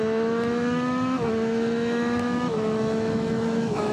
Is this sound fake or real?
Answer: fake